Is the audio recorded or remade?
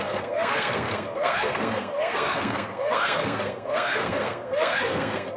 remade